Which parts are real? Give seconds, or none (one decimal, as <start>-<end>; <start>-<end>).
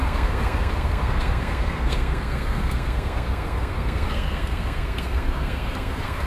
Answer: none